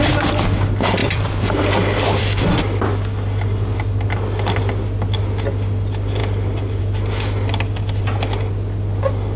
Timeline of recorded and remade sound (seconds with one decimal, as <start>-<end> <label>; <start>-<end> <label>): 0.0-1.0 recorded; 1.0-2.6 remade; 2.6-9.4 recorded